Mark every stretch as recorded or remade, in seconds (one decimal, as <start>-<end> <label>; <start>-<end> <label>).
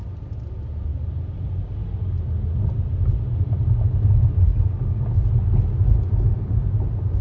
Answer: 0.0-0.9 recorded; 0.9-1.7 remade; 1.7-7.2 recorded